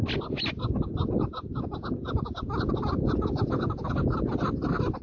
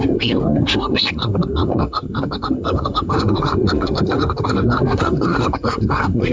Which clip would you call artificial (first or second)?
second